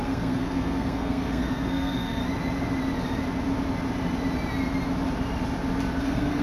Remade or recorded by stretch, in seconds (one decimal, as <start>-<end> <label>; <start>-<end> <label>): 0.0-2.2 remade; 2.2-6.0 recorded; 6.0-6.4 remade

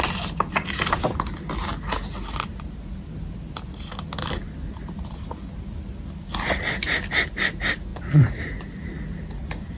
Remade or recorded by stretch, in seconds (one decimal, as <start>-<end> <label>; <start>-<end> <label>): 0.0-7.9 recorded; 7.9-8.4 remade; 8.4-9.8 recorded

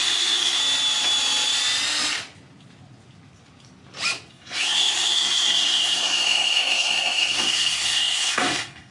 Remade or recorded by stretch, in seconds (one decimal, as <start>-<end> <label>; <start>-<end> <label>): 0.0-0.6 remade; 0.6-4.3 recorded; 4.3-8.9 remade